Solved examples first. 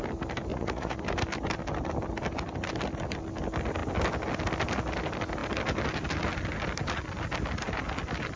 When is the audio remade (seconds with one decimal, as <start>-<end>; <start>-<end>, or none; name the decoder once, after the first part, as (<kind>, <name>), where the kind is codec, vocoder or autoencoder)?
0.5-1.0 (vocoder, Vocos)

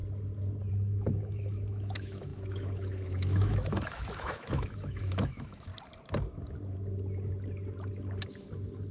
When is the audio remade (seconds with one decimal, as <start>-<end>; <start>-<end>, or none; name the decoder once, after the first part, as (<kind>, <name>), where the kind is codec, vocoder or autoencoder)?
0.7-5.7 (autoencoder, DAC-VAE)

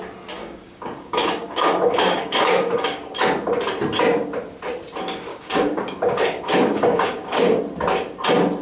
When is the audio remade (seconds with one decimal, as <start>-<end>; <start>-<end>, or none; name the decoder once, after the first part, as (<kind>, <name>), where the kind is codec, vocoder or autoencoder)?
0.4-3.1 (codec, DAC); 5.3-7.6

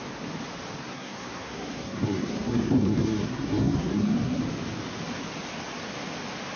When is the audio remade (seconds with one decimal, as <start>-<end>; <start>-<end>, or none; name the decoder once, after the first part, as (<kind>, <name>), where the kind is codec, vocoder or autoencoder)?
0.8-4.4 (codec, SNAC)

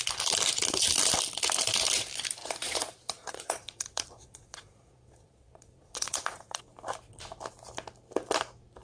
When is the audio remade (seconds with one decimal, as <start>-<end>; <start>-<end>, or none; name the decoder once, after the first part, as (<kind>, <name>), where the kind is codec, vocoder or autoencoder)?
2.4-6.6 (vocoder, Vocos)

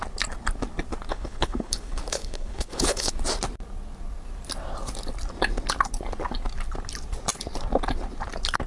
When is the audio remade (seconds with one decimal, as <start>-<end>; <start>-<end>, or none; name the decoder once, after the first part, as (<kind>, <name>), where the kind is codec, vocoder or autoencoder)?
1.1-3.1 (codec, HILCodec)